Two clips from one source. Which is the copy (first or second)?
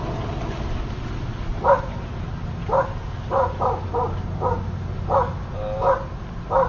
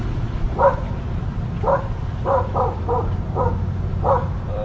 second